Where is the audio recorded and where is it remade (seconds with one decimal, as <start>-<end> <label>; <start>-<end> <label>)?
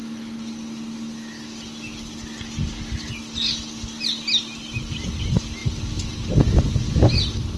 0.0-7.6 recorded